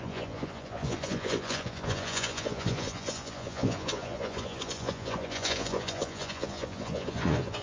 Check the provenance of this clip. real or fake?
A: fake